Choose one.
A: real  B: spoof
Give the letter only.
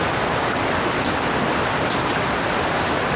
A